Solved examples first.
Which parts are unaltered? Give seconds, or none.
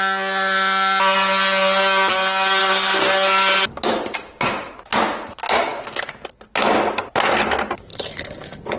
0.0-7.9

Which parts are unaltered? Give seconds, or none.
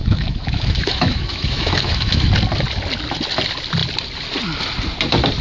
2.3-5.4